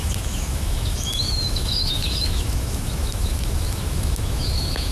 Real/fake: fake